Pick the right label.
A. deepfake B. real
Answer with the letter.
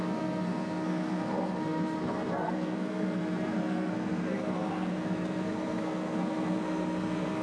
A